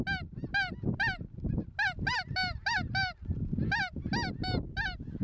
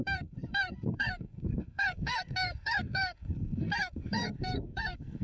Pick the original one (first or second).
first